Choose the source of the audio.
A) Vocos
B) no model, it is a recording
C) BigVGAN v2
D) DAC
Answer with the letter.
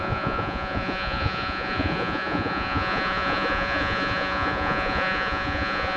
A